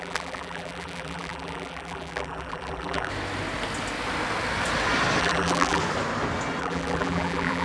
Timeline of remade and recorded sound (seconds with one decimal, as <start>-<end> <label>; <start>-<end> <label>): 0.0-3.1 remade; 3.1-5.2 recorded; 5.2-5.8 remade; 5.8-6.6 recorded; 6.6-7.6 remade